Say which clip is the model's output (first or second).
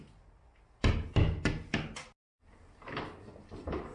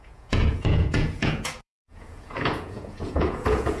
second